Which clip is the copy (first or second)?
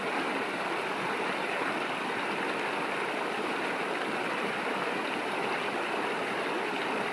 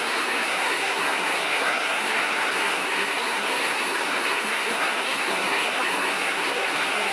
second